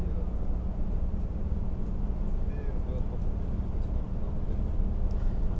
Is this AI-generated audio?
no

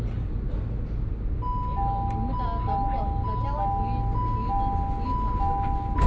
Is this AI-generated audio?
no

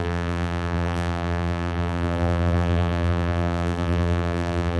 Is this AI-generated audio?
yes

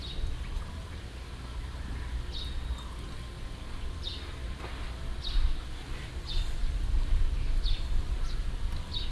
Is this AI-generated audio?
no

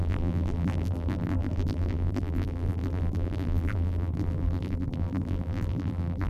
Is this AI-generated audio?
yes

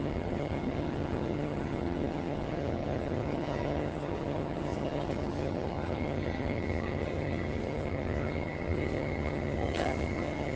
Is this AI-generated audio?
yes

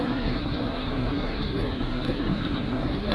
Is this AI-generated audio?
yes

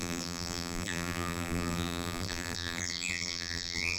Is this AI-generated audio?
yes